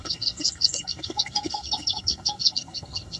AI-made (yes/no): yes